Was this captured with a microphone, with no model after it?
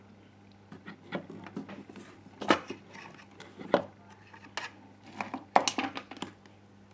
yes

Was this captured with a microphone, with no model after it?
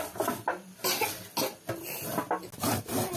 yes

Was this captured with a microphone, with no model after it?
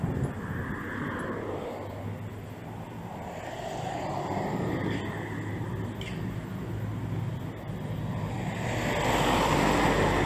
yes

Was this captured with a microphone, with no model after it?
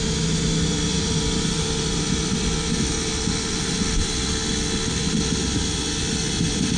yes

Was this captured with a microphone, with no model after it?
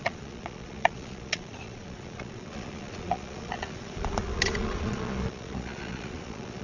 no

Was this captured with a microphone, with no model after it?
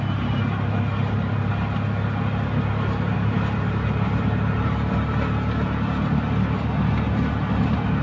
yes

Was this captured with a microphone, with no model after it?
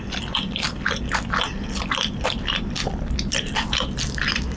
no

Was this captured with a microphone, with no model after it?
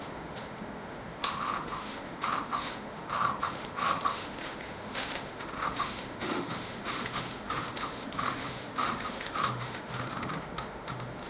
no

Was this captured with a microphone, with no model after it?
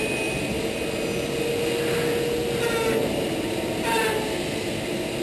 yes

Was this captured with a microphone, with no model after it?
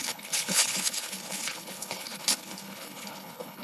no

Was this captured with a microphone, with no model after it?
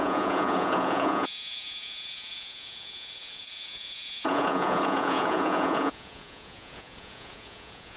no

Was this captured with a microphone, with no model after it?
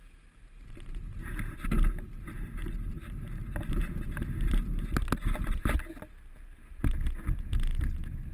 yes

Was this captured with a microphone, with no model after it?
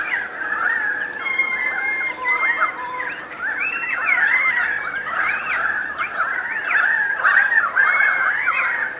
no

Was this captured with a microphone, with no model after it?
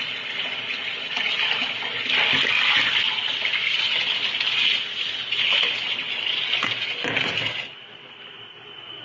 yes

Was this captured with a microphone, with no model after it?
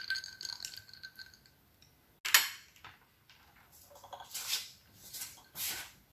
yes